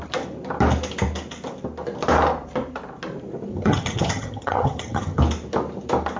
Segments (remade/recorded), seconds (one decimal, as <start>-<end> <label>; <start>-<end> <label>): 0.0-3.5 recorded; 3.5-5.2 remade; 5.2-6.2 recorded